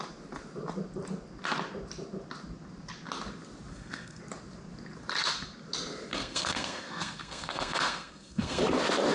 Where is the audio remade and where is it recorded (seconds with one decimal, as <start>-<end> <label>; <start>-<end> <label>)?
0.0-3.7 recorded; 3.7-4.2 remade; 4.2-6.1 recorded; 6.1-8.6 remade; 8.6-9.1 recorded